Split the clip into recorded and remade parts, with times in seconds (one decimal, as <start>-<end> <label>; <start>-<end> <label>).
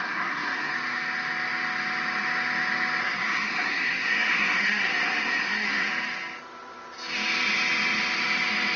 0.0-0.7 remade; 0.7-3.0 recorded; 3.0-5.9 remade; 5.9-8.8 recorded